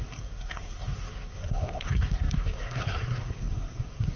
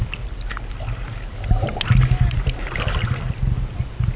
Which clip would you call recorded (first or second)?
second